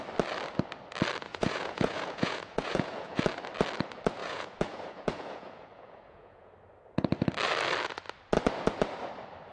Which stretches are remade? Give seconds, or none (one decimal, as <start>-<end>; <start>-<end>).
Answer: 1.3-3.2; 4.2-6.5